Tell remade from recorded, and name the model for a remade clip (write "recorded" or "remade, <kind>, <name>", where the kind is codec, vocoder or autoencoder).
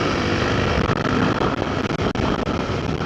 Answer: recorded